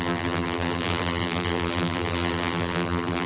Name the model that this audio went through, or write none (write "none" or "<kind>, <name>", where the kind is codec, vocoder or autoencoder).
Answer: vocoder, BigVGAN v2